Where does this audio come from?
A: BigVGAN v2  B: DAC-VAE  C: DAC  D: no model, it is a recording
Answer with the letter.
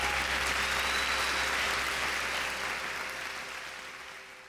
D